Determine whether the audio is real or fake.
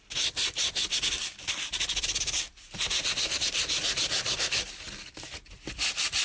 real